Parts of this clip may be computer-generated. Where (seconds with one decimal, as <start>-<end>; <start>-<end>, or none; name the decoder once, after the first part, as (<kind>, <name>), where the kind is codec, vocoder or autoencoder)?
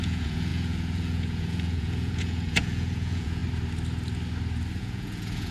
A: 0.0-3.4 (vocoder, Vocos); 4.8-5.5